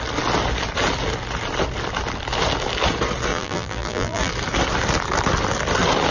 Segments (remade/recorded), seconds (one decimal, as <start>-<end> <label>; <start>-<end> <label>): 0.0-3.3 recorded; 3.3-4.3 remade; 4.3-6.1 recorded

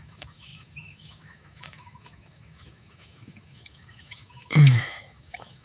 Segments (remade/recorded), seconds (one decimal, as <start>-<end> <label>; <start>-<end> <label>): 0.0-5.6 remade

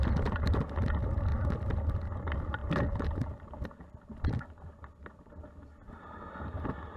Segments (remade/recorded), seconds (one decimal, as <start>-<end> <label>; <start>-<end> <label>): 0.0-1.3 recorded; 1.3-1.9 remade; 1.9-7.0 recorded

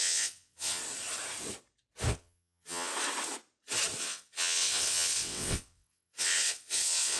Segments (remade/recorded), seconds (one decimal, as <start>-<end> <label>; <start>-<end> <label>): 0.0-0.8 remade; 0.8-2.1 recorded; 2.1-2.9 remade; 2.9-4.0 recorded; 4.0-7.2 remade

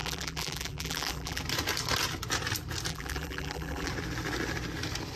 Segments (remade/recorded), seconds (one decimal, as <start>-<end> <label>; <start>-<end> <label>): 0.0-1.4 remade; 1.4-2.9 recorded; 2.9-3.9 remade; 3.9-5.2 recorded